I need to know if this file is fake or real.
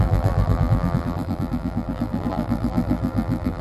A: fake